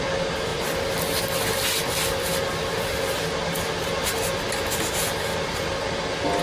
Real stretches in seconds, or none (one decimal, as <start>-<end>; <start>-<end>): 0.0-0.5; 1.2-2.7; 4.2-6.4